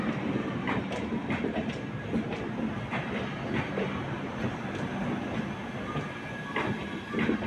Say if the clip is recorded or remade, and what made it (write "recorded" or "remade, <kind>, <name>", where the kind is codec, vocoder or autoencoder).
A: recorded